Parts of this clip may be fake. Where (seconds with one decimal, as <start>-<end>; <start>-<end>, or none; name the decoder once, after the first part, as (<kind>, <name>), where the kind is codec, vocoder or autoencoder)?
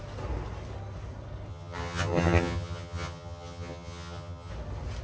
1.5-4.5 (vocoder, HiFi-GAN)